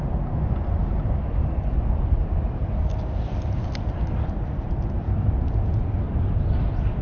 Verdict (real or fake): real